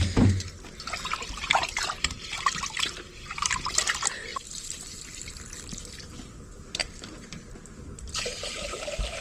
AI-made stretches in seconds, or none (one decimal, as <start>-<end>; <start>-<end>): 4.3-5.2; 6.8-8.1